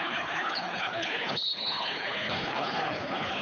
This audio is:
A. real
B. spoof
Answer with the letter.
B